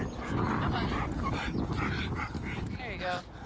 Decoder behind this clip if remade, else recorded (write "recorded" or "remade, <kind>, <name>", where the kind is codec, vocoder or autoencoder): recorded